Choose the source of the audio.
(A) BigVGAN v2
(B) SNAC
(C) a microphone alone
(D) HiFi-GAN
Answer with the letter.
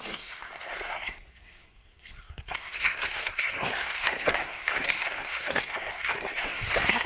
B